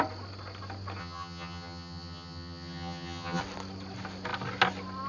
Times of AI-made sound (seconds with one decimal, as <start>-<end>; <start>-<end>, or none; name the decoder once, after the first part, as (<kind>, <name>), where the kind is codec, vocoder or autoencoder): 1.0-3.4 (vocoder, HiFi-GAN)